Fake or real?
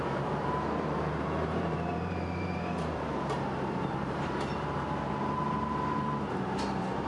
fake